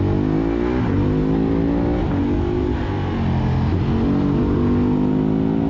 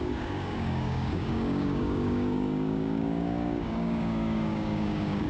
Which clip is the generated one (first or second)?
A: second